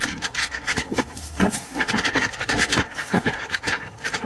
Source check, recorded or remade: remade